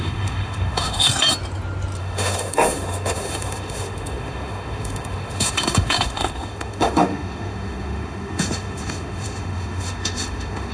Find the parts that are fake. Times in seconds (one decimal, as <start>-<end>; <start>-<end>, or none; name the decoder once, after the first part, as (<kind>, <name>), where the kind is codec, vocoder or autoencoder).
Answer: 0.0-1.1 (autoencoder, DAC-VAE); 2.0-10.7